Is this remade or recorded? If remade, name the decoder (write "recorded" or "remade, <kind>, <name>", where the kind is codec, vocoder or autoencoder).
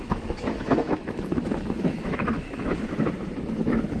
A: remade, autoencoder, DAC-VAE